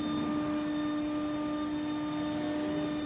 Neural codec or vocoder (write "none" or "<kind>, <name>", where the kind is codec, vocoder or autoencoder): none